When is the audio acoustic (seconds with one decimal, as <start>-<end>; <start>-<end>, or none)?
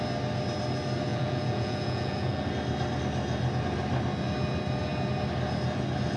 0.0-1.1; 2.5-6.2